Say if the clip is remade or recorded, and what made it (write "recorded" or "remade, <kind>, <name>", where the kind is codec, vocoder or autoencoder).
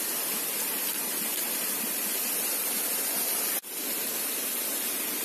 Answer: recorded